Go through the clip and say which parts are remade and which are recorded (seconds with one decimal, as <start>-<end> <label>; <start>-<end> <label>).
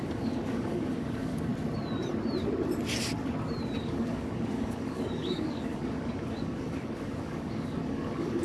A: 0.0-1.5 remade; 1.5-3.8 recorded; 3.8-8.4 remade